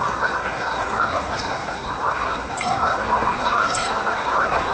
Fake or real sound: fake